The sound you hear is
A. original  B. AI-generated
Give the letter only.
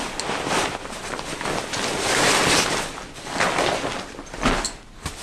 A